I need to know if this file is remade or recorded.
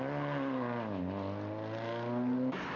recorded